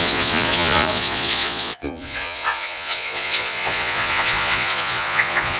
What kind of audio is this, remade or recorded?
remade